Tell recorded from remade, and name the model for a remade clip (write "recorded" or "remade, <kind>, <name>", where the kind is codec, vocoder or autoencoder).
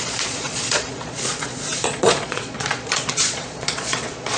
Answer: remade, vocoder, Vocos